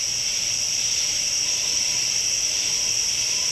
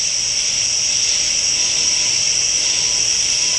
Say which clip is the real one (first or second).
second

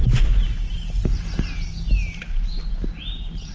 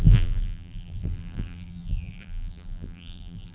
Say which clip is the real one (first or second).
first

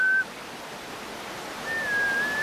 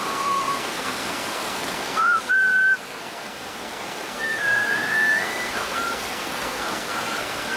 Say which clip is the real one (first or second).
first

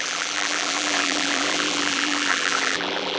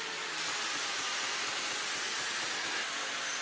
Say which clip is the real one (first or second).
second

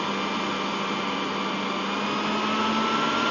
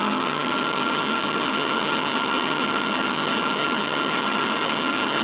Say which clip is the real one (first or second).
first